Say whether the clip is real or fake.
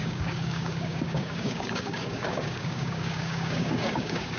fake